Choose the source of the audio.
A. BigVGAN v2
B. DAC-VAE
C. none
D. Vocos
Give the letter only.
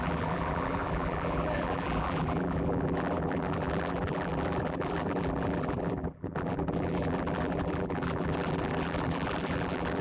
A